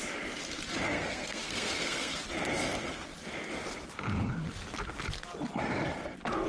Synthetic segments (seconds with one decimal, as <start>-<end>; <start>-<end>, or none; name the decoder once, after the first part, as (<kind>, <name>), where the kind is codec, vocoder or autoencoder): 0.9-2.2 (codec, SNAC)